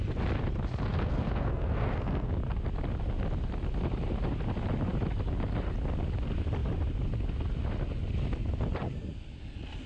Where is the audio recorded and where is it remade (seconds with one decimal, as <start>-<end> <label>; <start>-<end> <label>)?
0.0-0.9 recorded; 0.9-2.3 remade; 2.3-9.9 recorded